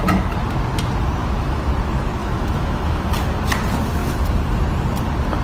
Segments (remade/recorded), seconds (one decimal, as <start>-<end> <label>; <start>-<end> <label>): 0.0-1.2 recorded; 1.2-1.7 remade; 1.7-2.2 recorded; 2.2-3.1 remade; 3.1-5.4 recorded

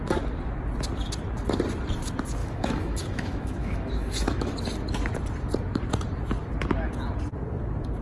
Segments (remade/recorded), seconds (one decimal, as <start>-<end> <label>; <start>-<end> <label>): 0.0-2.4 recorded; 2.4-4.5 remade; 4.5-8.0 recorded

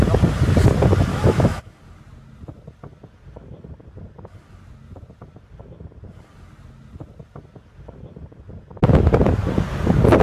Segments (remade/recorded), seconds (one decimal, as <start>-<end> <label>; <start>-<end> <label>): 0.0-1.1 recorded; 1.1-1.8 remade; 1.8-10.2 recorded

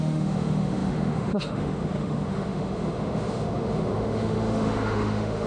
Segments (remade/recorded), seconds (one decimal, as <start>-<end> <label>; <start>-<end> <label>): 0.0-5.5 remade

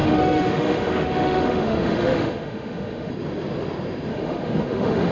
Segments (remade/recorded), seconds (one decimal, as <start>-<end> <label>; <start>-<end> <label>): 0.0-3.1 remade; 3.1-4.1 recorded; 4.1-5.1 remade